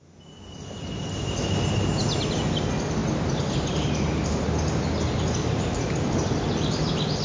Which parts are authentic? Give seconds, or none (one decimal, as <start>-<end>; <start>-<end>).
0.0-7.2